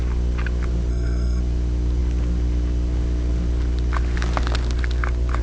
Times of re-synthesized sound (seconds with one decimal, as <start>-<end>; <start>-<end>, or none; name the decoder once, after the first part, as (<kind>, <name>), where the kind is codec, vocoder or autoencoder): 0.9-1.4 (codec, SNAC)